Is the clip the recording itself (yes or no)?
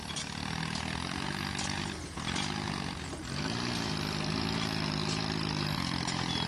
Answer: yes